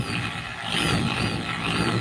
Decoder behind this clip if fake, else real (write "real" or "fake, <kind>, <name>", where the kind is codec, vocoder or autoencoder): real